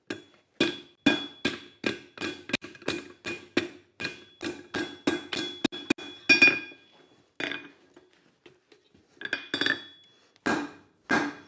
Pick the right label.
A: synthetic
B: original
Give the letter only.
B